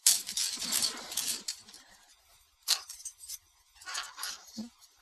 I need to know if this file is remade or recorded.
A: remade